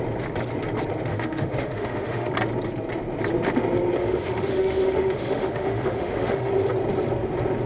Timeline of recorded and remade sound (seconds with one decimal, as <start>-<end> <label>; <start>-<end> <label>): 0.0-1.1 recorded; 1.1-2.3 remade; 2.3-4.0 recorded; 4.0-6.5 remade; 6.5-7.7 recorded